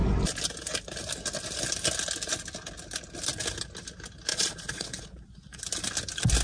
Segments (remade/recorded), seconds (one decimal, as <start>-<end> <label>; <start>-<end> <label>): 0.0-4.3 recorded; 4.3-5.6 remade; 5.6-6.4 recorded